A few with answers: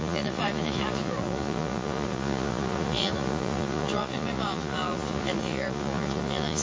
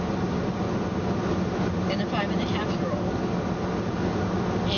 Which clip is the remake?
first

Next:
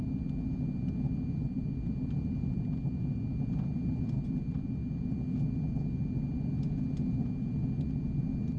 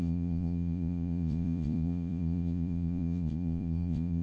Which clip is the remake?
second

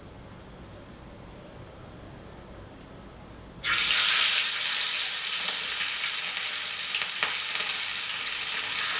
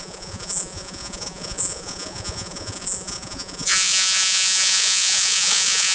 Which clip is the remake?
second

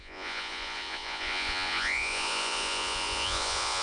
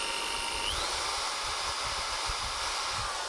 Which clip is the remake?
first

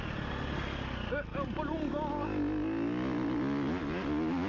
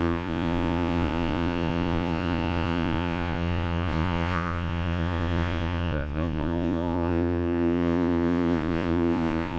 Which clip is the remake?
second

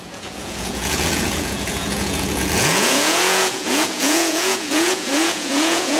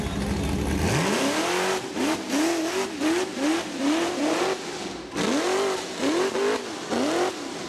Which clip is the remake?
first